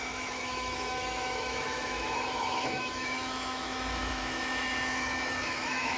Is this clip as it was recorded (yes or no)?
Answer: no